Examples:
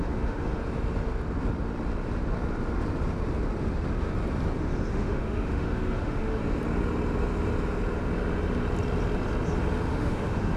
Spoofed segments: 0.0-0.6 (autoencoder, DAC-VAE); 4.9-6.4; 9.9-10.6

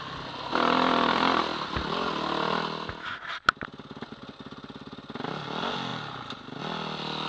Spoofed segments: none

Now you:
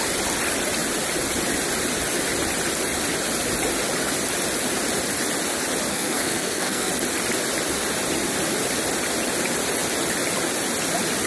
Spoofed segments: 5.9-6.9 (codec, SNAC)

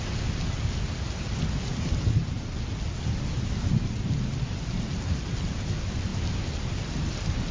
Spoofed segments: none

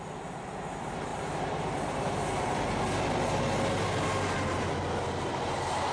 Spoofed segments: none

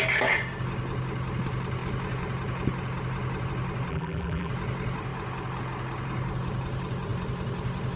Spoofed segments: 3.9-4.5 (vocoder, BigVGAN v2)

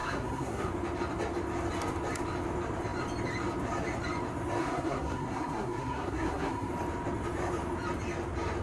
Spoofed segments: 0.0-0.7 (codec, SNAC); 4.6-6.7

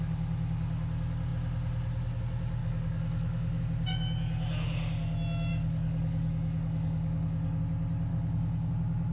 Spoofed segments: 2.6-3.6 (codec, DAC); 5.5-7.6; 8.1-8.7